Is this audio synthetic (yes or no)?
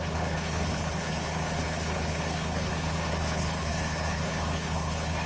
yes